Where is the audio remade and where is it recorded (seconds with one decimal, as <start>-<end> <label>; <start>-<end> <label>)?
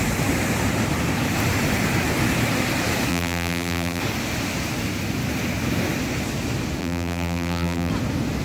0.0-3.1 recorded; 3.1-4.0 remade; 4.0-6.8 recorded; 6.8-7.9 remade; 7.9-8.4 recorded